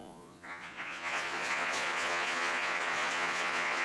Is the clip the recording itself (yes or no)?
no